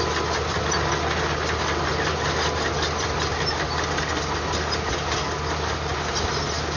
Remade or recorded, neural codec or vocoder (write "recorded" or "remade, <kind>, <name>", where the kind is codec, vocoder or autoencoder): recorded